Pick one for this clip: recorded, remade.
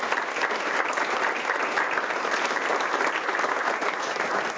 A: recorded